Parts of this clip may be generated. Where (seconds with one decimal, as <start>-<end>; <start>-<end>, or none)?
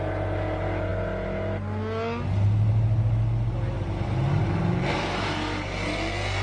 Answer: none